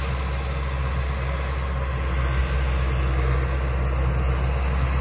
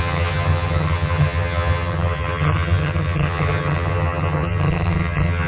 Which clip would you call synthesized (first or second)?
second